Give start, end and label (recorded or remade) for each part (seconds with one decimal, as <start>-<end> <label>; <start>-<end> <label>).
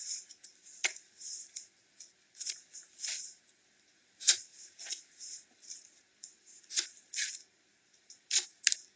0.0-0.8 recorded; 0.8-4.0 remade; 4.0-7.9 recorded; 7.9-8.6 remade; 8.6-9.0 recorded